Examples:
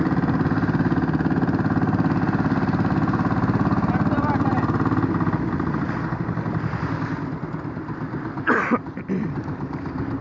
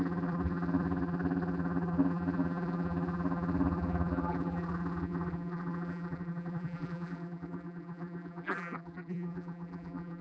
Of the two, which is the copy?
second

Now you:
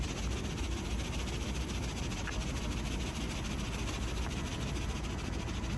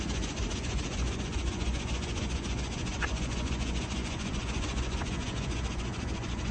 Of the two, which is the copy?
second